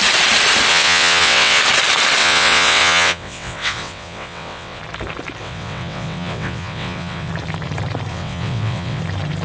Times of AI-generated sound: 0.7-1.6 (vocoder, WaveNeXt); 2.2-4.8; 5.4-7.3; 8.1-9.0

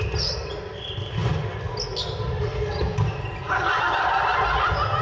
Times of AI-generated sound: none

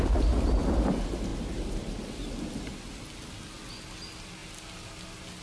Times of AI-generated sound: none

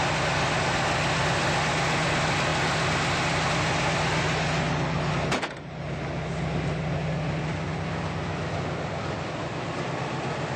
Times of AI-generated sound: none

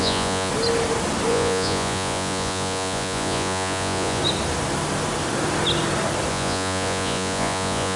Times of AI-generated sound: 0.0-0.5 (vocoder, Vocos); 1.3-4.2; 6.3-8.0

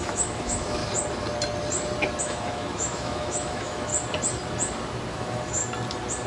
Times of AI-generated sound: 0.0-0.8 (autoencoder, DAC-VAE); 2.2-3.9; 5.1-5.6